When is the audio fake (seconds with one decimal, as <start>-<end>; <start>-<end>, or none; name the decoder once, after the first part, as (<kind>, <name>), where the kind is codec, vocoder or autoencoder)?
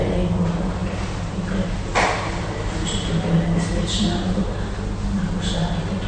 none